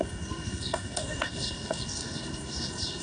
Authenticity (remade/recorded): remade